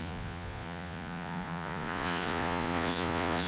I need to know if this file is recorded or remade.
remade